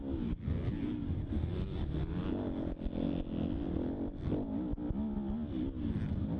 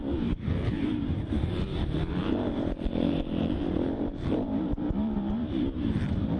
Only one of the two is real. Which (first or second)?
first